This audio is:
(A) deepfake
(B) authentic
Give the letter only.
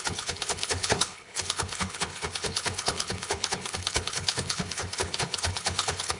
A